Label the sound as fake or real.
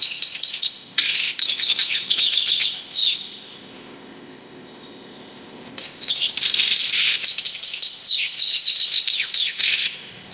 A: fake